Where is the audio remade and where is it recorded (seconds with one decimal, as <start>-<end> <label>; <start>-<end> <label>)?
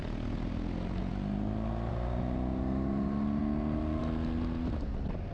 0.0-5.3 recorded